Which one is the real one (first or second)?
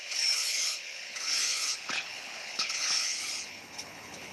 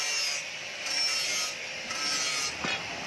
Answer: second